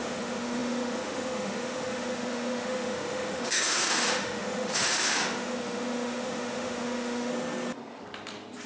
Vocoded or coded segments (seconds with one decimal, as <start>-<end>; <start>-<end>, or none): 0.0-7.3